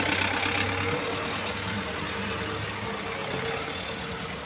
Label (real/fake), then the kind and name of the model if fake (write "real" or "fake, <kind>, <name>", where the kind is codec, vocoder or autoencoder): real